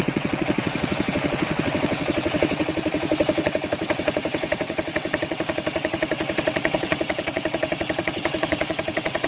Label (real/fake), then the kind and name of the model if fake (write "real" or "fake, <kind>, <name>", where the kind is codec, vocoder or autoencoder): fake, vocoder, WaveNeXt